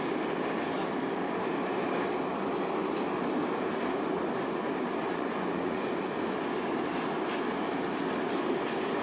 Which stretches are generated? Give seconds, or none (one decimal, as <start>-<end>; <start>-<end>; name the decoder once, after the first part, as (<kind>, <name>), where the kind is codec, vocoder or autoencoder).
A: 5.0-6.1 (vocoder, Vocos)